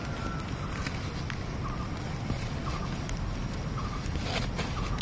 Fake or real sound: real